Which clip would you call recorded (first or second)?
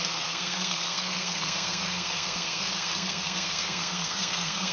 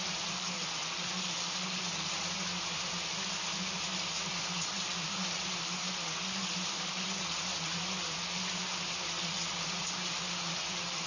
second